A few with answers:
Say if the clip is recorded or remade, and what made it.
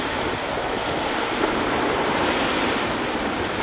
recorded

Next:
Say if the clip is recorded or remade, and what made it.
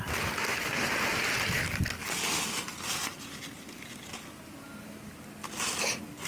recorded